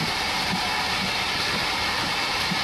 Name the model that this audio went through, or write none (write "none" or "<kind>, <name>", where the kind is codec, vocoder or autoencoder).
vocoder, BigVGAN v2